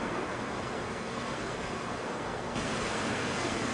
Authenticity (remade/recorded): remade